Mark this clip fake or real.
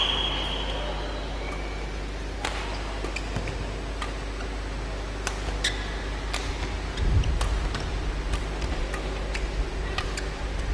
real